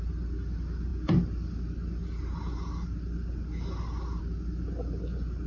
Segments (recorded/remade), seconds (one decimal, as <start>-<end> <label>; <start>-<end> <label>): 0.0-5.5 recorded